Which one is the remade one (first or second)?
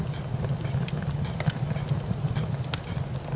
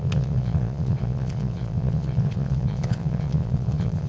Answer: second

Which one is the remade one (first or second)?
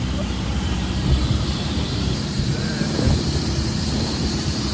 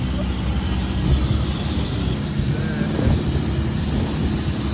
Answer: first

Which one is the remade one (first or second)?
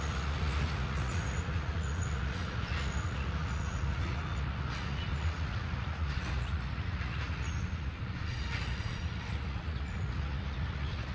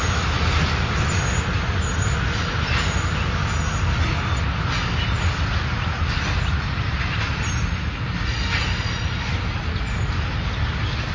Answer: first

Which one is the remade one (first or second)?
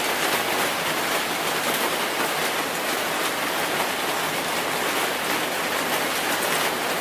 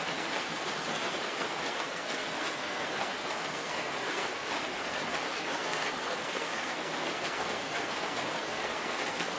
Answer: second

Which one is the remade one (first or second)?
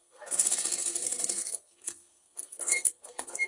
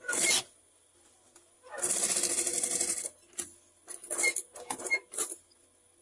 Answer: first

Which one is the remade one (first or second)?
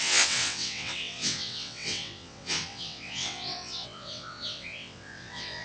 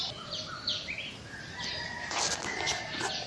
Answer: first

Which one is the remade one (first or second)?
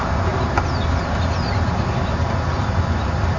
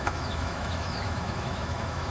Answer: second